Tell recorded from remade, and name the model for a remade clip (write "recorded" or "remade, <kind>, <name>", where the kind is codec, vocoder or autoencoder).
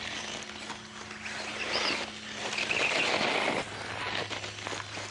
recorded